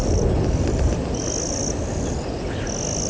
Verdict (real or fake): real